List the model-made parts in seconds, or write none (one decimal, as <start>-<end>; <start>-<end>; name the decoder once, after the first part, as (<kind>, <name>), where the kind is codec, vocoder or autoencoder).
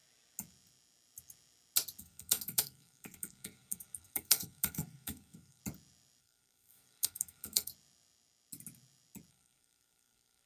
2.0-5.6 (codec, SNAC); 6.2-7.7; 9.3-10.5